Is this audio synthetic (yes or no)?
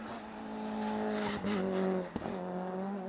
no